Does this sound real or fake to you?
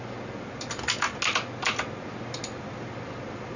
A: real